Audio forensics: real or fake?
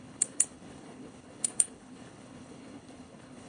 fake